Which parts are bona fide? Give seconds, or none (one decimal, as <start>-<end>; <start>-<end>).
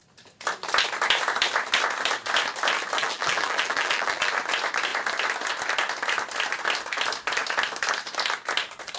0.0-3.0; 4.3-9.0